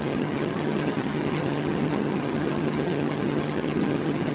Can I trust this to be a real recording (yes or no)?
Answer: no